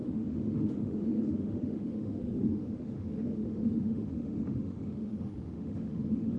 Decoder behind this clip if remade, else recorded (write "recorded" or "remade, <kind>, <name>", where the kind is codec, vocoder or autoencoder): remade, autoencoder, DAC-VAE